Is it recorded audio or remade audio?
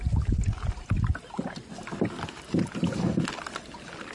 recorded